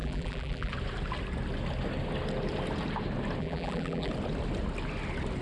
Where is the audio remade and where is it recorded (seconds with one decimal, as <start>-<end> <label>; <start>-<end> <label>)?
0.0-0.7 remade; 0.7-3.4 recorded; 3.4-4.1 remade; 4.1-5.4 recorded